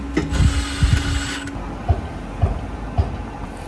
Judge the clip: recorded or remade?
recorded